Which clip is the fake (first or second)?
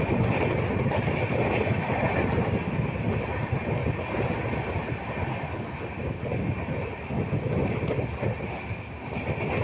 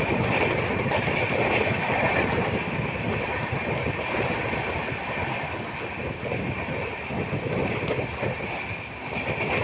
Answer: second